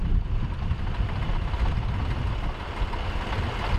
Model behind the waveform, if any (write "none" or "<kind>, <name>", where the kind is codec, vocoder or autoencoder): none